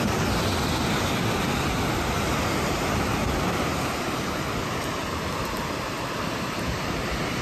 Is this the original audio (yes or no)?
yes